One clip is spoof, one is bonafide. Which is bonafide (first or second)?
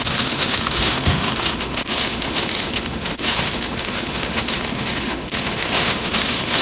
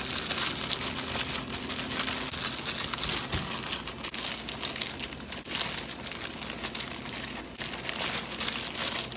second